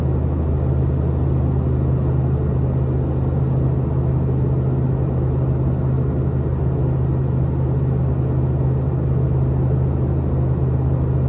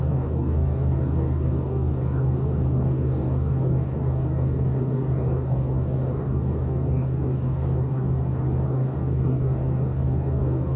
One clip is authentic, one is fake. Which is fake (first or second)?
second